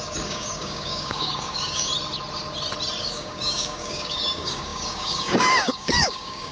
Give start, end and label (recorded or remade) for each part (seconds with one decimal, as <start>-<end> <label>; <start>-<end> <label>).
0.0-1.9 remade; 1.9-3.0 recorded; 3.0-6.5 remade